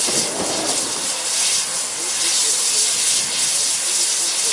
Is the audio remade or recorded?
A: recorded